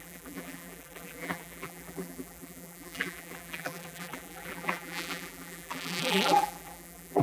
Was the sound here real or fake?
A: fake